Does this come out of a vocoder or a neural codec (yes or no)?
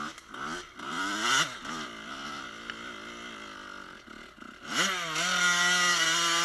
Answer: no